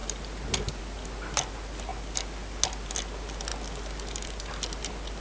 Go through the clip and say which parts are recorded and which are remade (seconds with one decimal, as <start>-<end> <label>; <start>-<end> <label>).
0.0-5.2 recorded